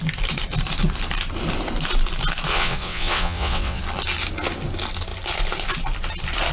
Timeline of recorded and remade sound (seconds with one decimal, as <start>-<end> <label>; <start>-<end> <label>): 0.0-2.5 recorded; 2.5-3.8 remade; 3.8-6.5 recorded